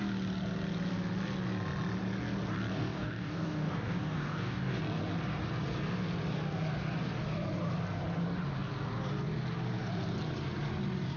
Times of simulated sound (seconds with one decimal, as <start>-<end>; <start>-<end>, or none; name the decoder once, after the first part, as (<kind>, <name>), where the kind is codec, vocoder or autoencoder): 2.7-4.8 (codec, DAC)

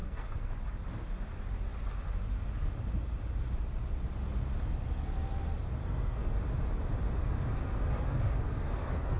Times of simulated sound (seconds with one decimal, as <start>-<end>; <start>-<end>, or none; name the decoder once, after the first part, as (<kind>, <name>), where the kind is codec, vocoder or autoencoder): 0.0-0.5 (codec, SNAC); 5.8-6.4; 7.2-9.2

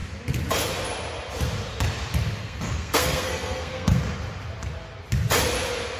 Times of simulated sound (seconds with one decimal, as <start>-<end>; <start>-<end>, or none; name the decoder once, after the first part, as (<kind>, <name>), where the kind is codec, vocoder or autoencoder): 2.4-4.0 (codec, SNAC)

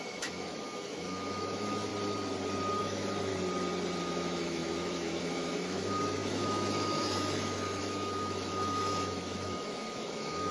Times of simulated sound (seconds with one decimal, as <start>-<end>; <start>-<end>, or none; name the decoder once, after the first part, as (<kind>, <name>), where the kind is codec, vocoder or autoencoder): 0.0-1.9 (autoencoder, DAC-VAE); 2.8-3.3; 4.0-10.5

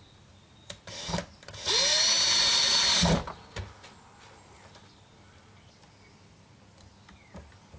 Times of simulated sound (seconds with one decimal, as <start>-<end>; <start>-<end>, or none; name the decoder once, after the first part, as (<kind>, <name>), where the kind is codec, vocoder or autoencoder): none

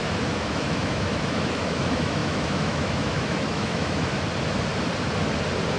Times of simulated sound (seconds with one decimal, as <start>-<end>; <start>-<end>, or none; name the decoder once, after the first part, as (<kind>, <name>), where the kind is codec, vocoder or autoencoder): 0.0-4.1 (autoencoder, DAC-VAE)